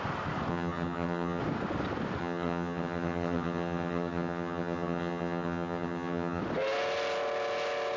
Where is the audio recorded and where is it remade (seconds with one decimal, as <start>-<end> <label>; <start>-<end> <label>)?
0.0-0.5 recorded; 0.5-1.4 remade; 1.4-2.2 recorded; 2.2-6.4 remade; 6.4-8.0 recorded

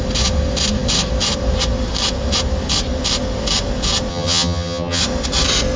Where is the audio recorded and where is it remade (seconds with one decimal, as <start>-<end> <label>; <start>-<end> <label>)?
0.0-4.1 recorded; 4.1-5.0 remade; 5.0-5.8 recorded

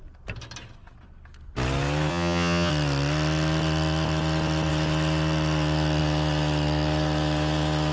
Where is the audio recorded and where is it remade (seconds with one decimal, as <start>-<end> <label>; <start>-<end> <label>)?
0.0-2.1 recorded; 2.1-2.7 remade; 2.7-7.9 recorded

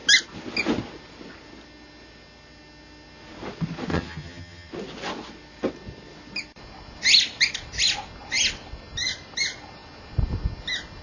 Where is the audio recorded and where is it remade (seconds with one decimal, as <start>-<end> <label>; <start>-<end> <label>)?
0.0-3.9 recorded; 3.9-4.7 remade; 4.7-11.0 recorded

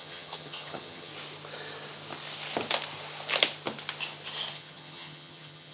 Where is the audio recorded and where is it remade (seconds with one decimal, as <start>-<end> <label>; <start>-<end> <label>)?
0.0-1.1 remade; 1.1-4.5 recorded; 4.5-5.7 remade

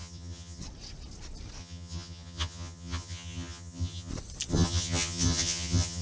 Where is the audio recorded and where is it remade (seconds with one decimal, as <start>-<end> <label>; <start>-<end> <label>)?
0.0-0.6 remade; 0.6-1.6 recorded; 1.6-4.1 remade; 4.1-4.5 recorded; 4.5-6.0 remade

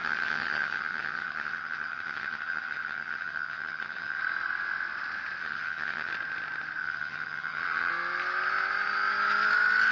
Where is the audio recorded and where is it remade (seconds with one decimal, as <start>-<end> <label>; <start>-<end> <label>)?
0.0-4.2 remade; 4.2-5.4 recorded; 5.4-6.1 remade; 6.1-6.8 recorded; 6.8-7.9 remade; 7.9-9.9 recorded